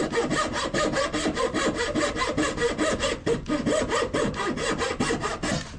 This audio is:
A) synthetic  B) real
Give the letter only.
B